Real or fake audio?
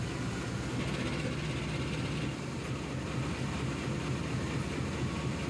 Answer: real